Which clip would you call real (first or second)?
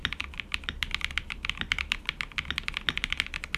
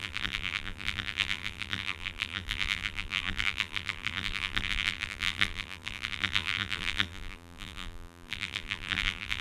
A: first